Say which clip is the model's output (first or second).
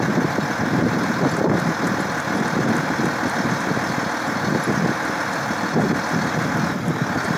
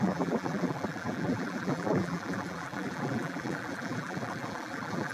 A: second